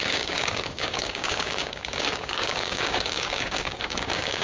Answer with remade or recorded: remade